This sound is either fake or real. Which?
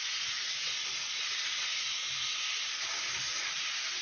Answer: real